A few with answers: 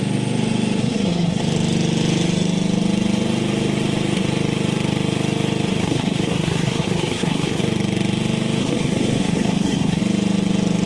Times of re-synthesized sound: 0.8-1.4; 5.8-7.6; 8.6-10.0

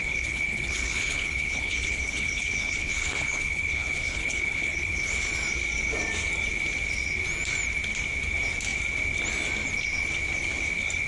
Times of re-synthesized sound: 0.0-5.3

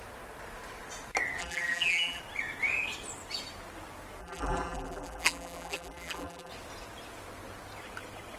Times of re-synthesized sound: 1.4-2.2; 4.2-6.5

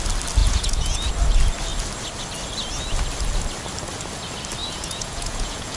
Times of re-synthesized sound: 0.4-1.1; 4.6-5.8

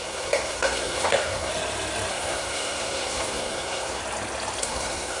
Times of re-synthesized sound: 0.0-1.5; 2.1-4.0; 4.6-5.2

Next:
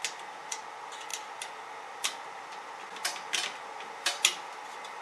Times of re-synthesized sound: none

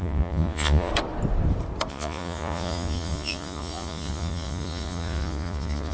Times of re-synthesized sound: 0.0-0.9; 1.9-5.9